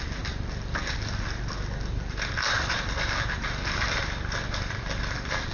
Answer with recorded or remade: recorded